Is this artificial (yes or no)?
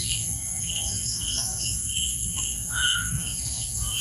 yes